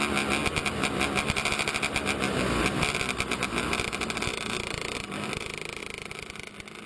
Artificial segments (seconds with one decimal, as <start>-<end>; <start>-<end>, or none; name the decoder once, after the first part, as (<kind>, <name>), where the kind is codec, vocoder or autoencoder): none